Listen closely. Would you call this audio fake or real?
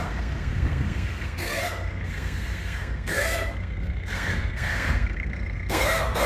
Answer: fake